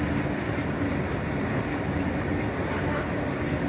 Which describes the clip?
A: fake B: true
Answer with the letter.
B